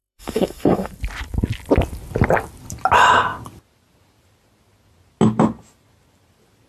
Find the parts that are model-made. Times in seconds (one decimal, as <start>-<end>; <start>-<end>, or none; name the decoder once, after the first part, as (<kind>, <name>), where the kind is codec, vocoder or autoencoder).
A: 0.0-0.9 (autoencoder, DAC-VAE)